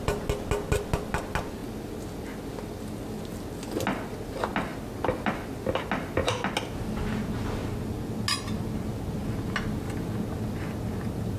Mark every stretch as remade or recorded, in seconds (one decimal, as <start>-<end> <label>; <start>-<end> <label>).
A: 0.0-11.4 recorded